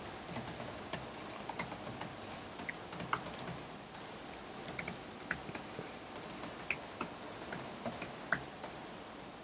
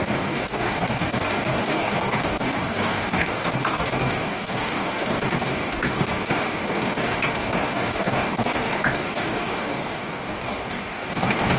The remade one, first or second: second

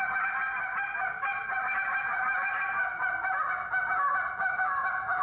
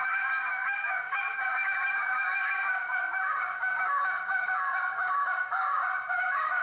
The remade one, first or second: second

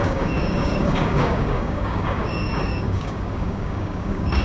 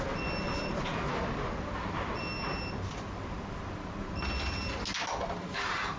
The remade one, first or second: first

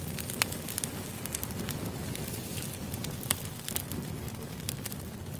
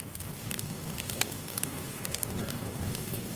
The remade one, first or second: second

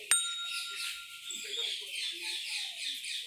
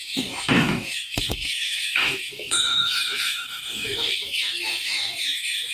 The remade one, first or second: second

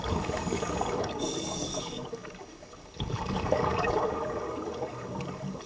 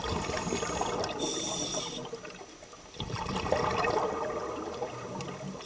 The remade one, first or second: first